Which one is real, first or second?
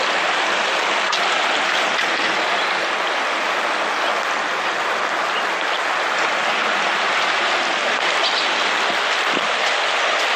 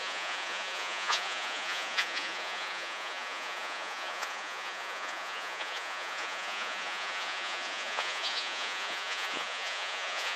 first